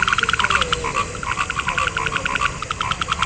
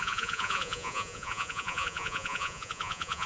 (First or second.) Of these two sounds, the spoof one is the second